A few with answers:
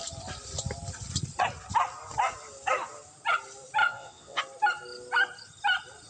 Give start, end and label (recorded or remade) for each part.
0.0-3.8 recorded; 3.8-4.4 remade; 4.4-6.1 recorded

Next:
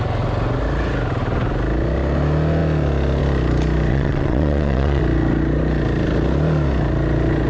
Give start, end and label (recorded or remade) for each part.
0.0-3.9 recorded; 3.9-5.0 remade; 5.0-7.5 recorded

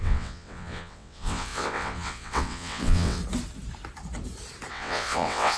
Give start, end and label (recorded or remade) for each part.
0.0-3.2 remade; 3.2-4.7 recorded; 4.7-5.6 remade

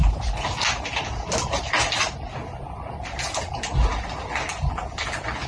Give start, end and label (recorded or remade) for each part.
0.0-5.5 recorded

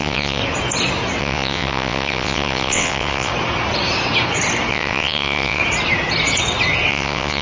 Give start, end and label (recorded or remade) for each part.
0.0-0.4 remade; 0.4-1.2 recorded; 1.2-3.3 remade; 3.3-4.7 recorded; 4.7-5.6 remade; 5.6-6.9 recorded; 6.9-7.4 remade

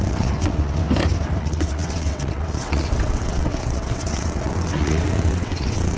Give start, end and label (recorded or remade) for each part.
0.0-0.8 remade; 0.8-1.4 recorded; 1.4-6.0 remade

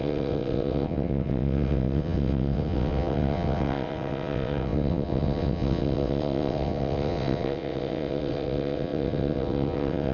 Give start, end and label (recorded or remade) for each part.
0.0-10.1 remade